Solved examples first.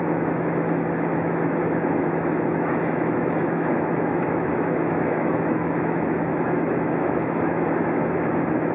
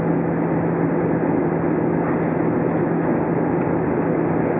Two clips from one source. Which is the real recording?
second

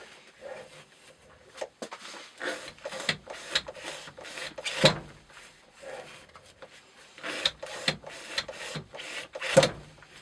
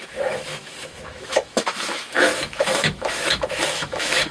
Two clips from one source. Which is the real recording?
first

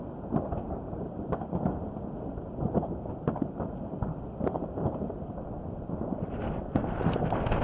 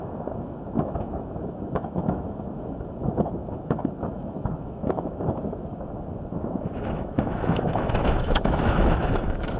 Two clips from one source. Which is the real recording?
first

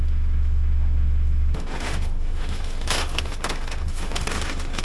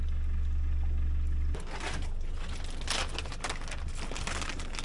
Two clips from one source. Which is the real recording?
second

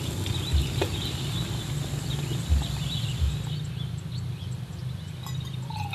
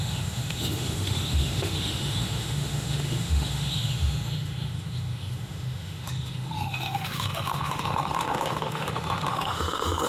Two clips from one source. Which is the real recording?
first